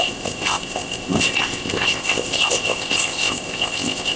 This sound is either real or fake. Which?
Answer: fake